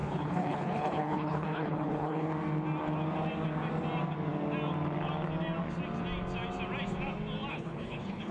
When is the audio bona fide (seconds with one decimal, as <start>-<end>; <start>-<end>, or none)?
2.3-7.5